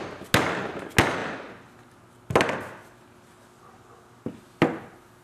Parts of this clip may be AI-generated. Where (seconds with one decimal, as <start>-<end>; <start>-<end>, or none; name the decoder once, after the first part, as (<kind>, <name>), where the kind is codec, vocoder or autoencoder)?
none